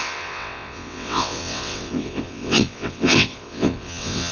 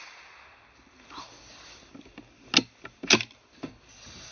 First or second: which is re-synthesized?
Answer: first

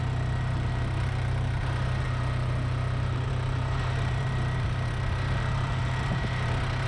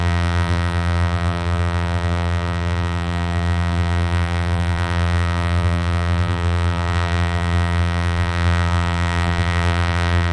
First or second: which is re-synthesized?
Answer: second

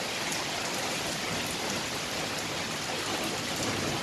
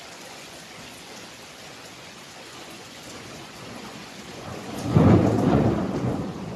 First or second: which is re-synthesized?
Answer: second